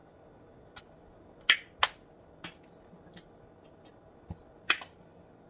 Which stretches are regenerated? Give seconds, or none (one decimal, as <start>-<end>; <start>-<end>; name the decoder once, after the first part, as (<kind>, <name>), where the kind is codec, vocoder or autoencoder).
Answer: none